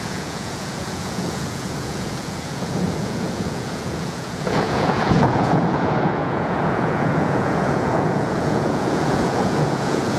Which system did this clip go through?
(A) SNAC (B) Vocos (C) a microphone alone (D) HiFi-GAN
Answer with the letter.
B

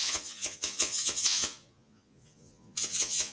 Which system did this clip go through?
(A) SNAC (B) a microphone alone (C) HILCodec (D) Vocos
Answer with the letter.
D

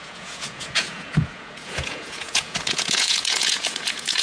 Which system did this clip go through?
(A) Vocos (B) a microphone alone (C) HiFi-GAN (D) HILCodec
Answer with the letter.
A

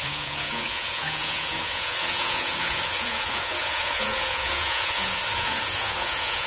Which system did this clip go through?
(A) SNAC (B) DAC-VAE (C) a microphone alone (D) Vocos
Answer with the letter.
D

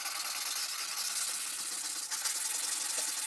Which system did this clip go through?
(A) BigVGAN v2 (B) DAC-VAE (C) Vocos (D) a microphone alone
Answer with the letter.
D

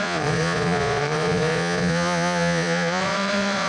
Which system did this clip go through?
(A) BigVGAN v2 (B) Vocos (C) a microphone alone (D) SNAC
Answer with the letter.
B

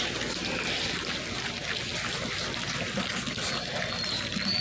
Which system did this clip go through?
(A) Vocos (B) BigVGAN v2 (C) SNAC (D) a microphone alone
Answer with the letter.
D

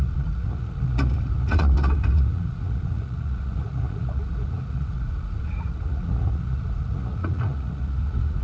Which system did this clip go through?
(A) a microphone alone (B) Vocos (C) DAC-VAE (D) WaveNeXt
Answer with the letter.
B